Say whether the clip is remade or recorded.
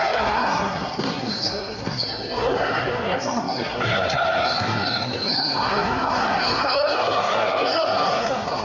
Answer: remade